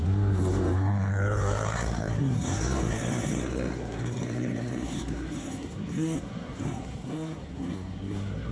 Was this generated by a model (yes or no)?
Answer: yes